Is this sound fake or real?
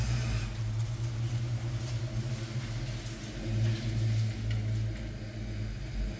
real